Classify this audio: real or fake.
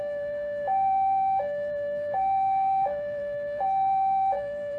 fake